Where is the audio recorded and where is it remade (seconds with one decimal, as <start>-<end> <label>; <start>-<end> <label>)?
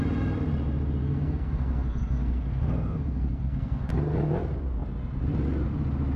0.0-1.0 recorded; 1.0-3.9 remade; 3.9-6.2 recorded